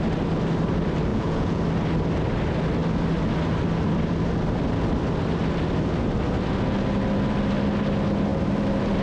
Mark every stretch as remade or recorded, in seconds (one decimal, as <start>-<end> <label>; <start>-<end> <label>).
0.0-1.1 recorded; 1.1-1.6 remade; 1.6-9.0 recorded